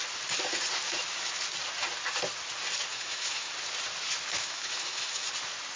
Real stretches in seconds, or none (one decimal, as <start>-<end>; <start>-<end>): 0.0-2.9; 3.5-4.4; 5.3-5.8